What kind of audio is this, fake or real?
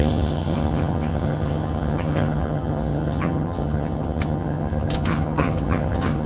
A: fake